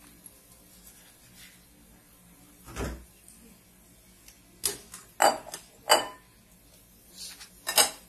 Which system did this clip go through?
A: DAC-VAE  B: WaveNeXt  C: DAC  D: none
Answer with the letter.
D